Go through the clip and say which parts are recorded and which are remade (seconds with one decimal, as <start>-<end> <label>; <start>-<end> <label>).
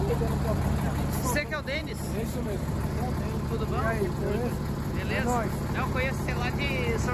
0.0-1.8 recorded; 1.8-2.7 remade; 2.7-7.1 recorded